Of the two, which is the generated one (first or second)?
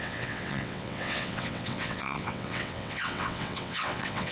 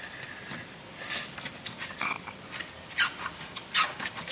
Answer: first